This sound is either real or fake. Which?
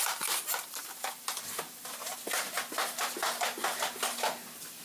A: fake